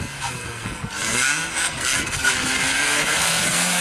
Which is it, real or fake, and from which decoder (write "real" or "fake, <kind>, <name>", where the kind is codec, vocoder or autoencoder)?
fake, codec, SNAC